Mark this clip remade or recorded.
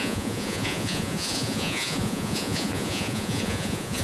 remade